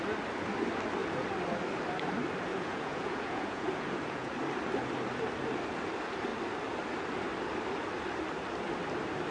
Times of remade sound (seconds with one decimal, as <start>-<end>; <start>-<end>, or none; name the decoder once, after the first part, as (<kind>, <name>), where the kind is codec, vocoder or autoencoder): 2.5-4.3 (vocoder, Vocos)

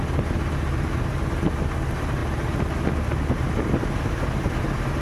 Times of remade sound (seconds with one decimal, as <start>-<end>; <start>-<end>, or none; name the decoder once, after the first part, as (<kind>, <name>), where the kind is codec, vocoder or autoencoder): none